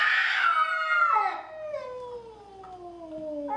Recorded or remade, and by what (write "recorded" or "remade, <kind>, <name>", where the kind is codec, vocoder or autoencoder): recorded